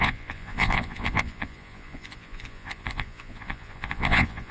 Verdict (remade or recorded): remade